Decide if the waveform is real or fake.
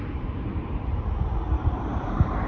fake